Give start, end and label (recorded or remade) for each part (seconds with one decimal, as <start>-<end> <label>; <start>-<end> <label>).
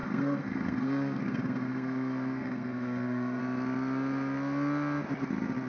0.0-3.4 remade; 3.4-5.7 recorded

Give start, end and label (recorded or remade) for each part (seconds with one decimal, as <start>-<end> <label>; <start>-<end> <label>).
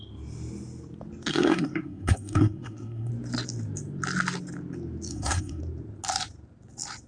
0.0-1.3 recorded; 1.3-3.1 remade; 3.1-5.1 recorded; 5.1-5.6 remade; 5.6-7.1 recorded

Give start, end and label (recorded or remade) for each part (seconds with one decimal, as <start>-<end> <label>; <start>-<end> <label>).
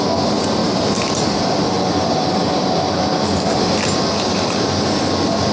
0.0-5.5 recorded